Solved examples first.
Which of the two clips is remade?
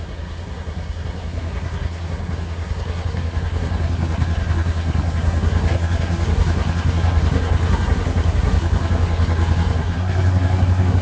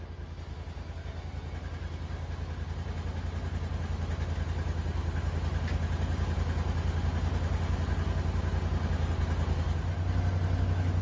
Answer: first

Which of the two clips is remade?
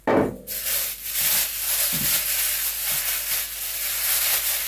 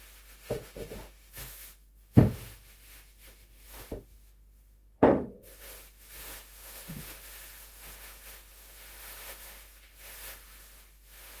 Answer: second